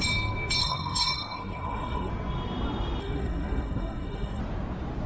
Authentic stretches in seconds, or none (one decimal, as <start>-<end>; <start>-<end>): 0.0-0.6; 2.1-3.0; 4.4-5.1